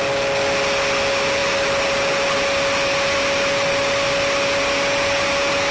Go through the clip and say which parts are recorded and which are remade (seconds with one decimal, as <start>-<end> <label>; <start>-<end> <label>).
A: 0.0-5.7 recorded